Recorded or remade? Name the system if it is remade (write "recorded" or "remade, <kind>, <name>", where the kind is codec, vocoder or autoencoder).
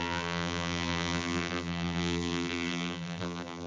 remade, vocoder, BigVGAN v2